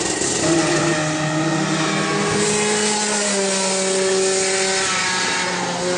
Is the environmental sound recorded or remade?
recorded